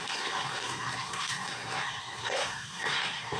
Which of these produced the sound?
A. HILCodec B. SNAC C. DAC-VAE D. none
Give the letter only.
B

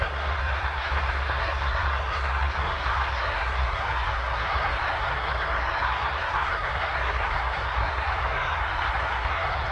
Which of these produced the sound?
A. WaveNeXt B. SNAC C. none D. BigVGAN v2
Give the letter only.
B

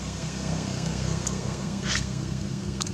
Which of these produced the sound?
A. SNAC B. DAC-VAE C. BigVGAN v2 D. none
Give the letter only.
A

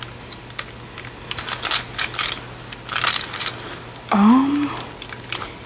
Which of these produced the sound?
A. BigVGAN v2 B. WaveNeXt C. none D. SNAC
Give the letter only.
C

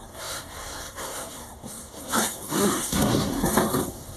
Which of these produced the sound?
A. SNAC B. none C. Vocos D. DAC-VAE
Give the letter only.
A